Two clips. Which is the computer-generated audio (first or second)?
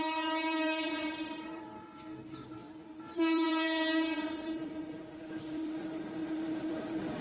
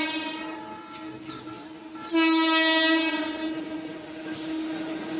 first